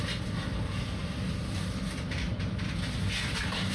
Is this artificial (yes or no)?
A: no